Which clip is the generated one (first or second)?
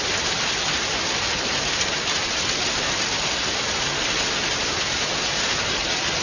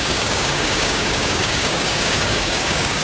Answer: second